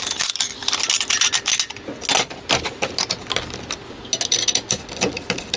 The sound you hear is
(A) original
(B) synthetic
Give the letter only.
A